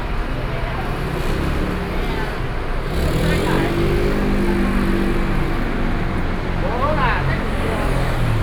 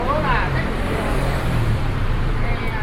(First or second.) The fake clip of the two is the second